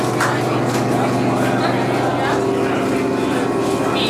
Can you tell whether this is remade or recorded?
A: recorded